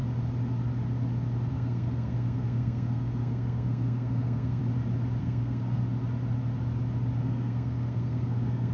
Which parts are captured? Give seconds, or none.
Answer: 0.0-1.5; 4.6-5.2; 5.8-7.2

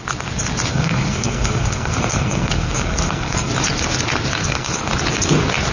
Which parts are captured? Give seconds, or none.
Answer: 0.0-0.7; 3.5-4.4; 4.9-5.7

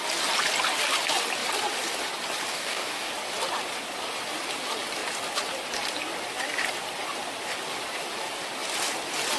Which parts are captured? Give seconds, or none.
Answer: 0.0-2.5; 3.1-9.4